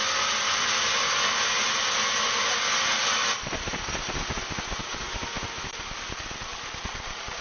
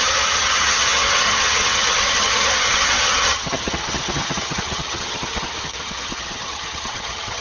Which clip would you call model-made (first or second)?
second